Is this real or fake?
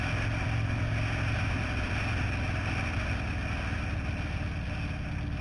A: real